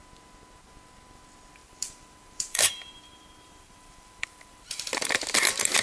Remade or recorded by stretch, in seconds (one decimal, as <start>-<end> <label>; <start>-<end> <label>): 0.0-1.6 recorded; 1.6-5.1 remade; 5.1-5.8 recorded